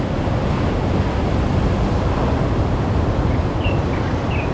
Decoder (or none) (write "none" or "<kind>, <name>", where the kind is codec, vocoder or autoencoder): none